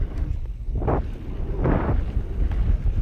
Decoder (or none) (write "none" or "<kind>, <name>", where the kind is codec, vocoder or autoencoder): none